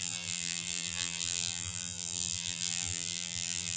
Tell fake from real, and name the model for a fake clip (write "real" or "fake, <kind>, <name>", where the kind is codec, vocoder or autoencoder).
fake, vocoder, BigVGAN v2